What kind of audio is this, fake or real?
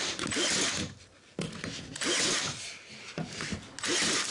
real